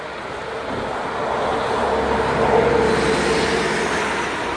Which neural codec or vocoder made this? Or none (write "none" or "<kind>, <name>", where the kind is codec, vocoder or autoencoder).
none